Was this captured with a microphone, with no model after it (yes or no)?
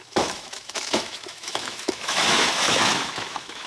no